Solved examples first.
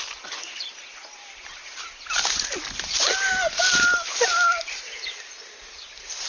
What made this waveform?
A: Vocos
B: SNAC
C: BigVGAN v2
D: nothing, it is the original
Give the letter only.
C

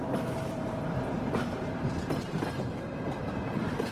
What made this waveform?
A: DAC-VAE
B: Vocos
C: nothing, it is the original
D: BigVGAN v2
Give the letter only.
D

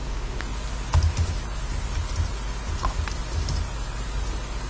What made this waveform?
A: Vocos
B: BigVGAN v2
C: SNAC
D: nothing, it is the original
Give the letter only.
D